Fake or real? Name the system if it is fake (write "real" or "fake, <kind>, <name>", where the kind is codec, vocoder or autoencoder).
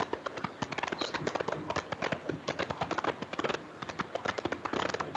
real